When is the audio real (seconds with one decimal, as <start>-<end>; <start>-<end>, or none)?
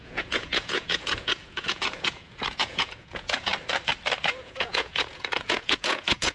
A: 3.5-4.2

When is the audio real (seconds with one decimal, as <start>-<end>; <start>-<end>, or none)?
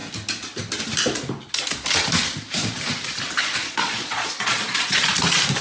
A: 0.0-3.4; 5.1-5.6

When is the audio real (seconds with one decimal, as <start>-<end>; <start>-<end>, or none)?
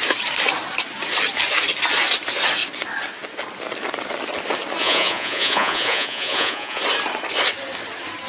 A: 0.0-4.8; 6.8-8.3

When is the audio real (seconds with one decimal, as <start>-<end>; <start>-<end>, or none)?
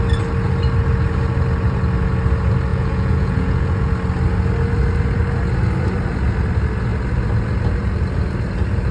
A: 0.0-2.7; 3.9-8.9